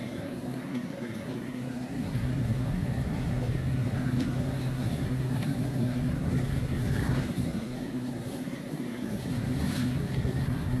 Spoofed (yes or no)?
yes